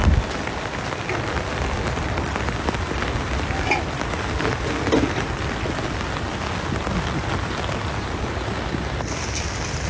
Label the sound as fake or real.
real